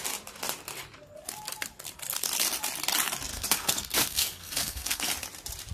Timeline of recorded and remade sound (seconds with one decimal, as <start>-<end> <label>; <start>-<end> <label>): 0.0-3.3 recorded; 3.3-5.1 remade; 5.1-5.7 recorded